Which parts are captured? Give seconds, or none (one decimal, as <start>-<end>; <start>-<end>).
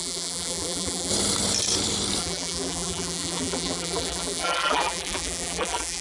1.1-2.2